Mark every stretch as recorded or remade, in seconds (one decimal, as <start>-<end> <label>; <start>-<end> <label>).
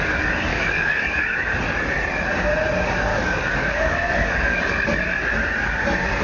0.0-0.5 recorded; 0.5-1.2 remade; 1.2-3.1 recorded; 3.1-4.6 remade; 4.6-6.2 recorded